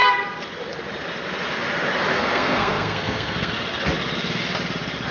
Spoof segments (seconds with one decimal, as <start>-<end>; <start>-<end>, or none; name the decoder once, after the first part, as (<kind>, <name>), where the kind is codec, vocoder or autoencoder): 2.1-3.5 (codec, SNAC)